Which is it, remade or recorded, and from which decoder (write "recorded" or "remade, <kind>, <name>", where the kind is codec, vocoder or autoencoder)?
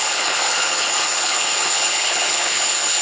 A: remade, codec, HILCodec